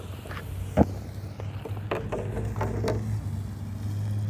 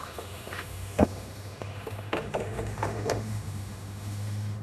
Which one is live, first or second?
first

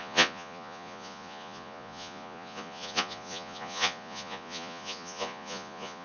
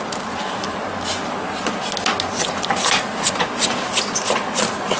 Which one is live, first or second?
second